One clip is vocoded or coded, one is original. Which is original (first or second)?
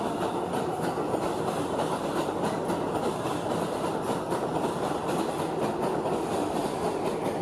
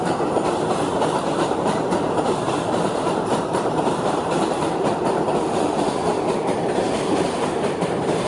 first